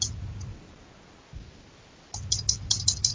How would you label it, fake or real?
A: real